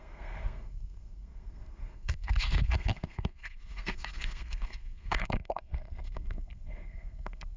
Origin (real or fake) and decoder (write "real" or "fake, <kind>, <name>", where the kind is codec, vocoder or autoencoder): fake, codec, SNAC